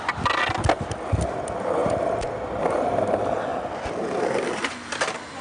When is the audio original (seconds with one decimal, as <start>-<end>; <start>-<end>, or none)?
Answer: 0.0-5.4